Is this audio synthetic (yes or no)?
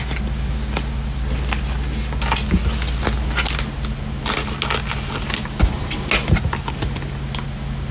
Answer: no